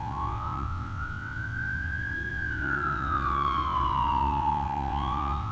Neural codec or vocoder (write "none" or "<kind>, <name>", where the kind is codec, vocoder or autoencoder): vocoder, WaveNeXt